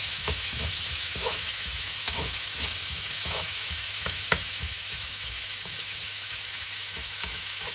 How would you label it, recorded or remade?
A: remade